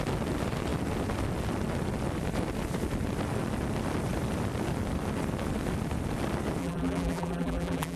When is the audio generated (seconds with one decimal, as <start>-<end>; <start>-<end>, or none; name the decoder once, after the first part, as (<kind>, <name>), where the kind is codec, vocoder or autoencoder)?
6.6-8.0 (vocoder, BigVGAN v2)